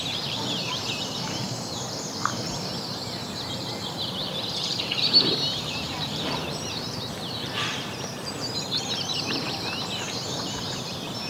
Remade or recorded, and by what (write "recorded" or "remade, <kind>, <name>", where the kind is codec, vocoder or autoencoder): remade, vocoder, BigVGAN v2